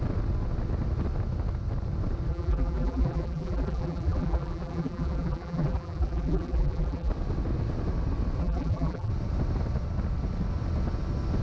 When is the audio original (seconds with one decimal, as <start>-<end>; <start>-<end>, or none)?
0.0-2.3; 7.1-8.4; 9.1-11.4

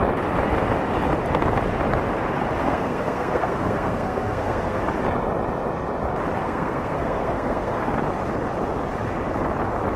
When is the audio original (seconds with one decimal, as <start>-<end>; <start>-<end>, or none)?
0.0-2.6; 4.8-6.4; 7.9-10.0